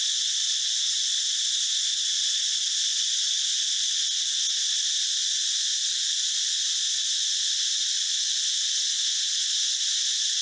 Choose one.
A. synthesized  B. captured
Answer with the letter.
B